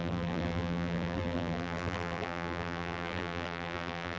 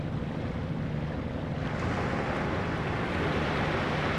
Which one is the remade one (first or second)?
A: first